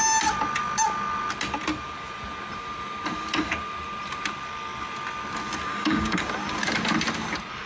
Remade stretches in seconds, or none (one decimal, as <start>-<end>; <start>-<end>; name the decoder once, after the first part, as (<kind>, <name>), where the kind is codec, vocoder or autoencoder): 5.7-6.2 (codec, DAC)